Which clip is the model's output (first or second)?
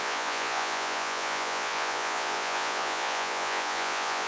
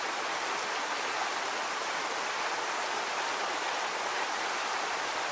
first